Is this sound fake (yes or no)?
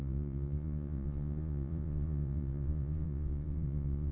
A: yes